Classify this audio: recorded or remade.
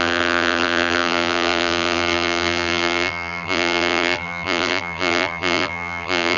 remade